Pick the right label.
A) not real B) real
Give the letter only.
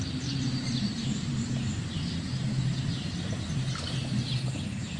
A